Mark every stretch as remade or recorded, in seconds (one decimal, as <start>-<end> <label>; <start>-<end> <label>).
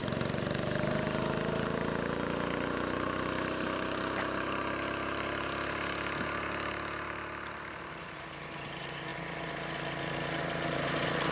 0.0-9.1 remade; 9.1-10.4 recorded; 10.4-11.3 remade